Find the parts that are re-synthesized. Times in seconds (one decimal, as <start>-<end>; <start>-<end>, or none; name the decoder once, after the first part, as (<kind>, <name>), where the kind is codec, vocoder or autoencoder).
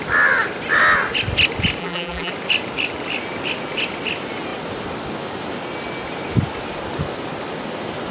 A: 1.8-2.3 (vocoder, BigVGAN v2)